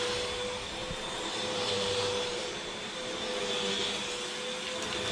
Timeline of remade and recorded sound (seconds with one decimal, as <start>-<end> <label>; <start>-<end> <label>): 0.0-0.8 recorded; 0.8-3.4 remade; 3.4-5.1 recorded